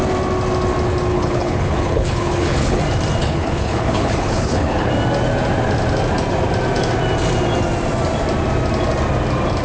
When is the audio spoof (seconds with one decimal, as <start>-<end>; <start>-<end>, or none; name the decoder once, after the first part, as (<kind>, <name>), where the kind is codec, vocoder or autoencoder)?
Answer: 1.1-2.8 (codec, HILCodec); 3.2-4.9